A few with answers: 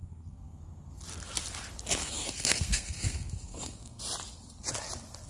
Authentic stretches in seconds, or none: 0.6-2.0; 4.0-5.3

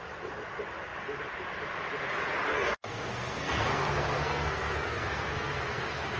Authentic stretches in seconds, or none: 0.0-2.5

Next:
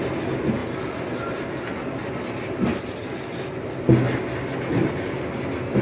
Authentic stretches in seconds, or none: 0.0-5.8

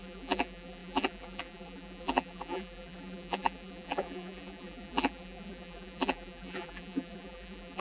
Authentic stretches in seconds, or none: none